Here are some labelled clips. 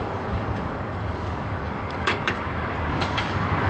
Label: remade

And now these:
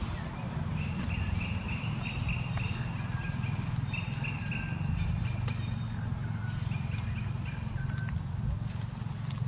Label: recorded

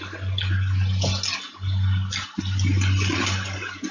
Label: recorded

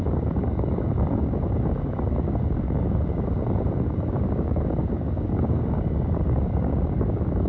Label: remade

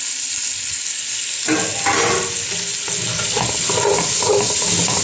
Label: recorded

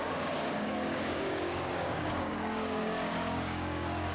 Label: remade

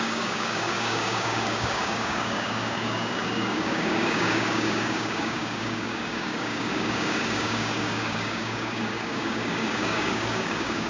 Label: remade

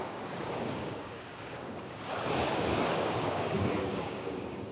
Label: remade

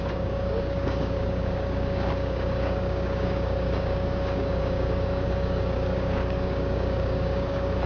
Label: remade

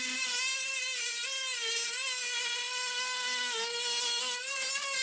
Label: recorded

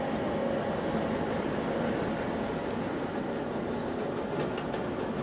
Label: recorded